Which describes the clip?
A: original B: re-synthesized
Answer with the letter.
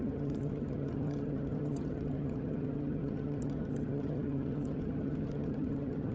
B